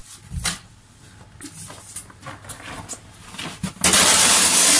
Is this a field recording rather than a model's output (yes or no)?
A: yes